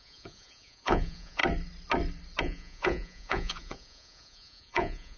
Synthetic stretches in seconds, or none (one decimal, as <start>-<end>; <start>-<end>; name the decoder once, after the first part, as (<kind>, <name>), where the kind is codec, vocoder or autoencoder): 0.0-1.4 (vocoder, Vocos); 2.4-5.2